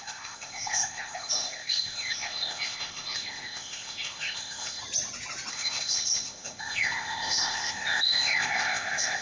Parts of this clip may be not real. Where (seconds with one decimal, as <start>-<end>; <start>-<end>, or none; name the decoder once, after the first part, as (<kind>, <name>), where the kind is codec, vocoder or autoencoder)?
0.0-4.8 (codec, ZipCodec); 5.5-9.2